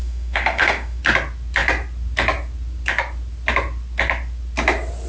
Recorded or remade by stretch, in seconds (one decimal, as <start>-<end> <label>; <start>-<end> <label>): 0.0-1.0 remade; 1.0-5.1 recorded